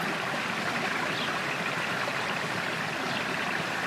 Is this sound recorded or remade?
recorded